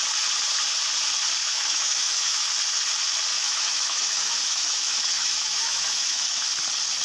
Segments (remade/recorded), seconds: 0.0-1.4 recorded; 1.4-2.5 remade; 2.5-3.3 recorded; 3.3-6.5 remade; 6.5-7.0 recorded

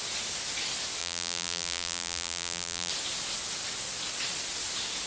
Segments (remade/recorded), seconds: 0.0-1.0 recorded; 1.0-2.9 remade; 2.9-5.1 recorded

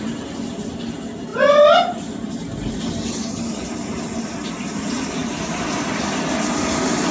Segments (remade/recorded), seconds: 0.0-7.1 recorded

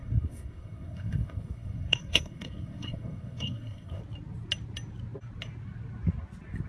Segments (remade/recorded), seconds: 0.0-4.0 remade; 4.0-6.7 recorded

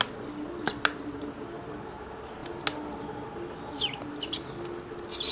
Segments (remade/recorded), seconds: 0.0-5.3 recorded

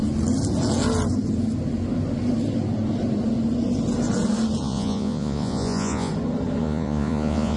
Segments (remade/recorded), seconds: 0.0-4.6 recorded; 4.6-6.1 remade; 6.1-6.6 recorded; 6.6-7.6 remade

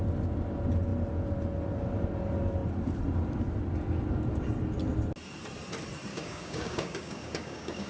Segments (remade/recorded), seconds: 0.0-6.1 recorded; 6.1-7.9 remade